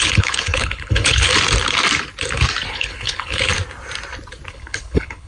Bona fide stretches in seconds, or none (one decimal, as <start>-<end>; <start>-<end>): 1.3-2.7; 3.5-4.5